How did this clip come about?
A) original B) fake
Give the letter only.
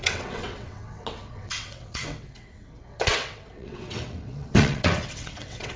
B